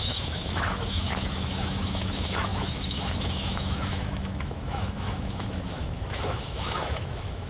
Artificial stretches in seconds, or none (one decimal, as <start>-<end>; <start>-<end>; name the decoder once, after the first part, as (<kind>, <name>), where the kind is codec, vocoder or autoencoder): 0.0-7.5 (autoencoder, DAC-VAE)